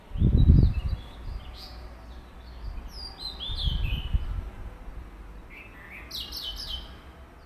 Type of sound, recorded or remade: recorded